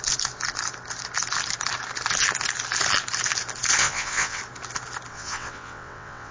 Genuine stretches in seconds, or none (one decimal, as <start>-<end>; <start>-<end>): 0.0-3.8; 4.4-5.1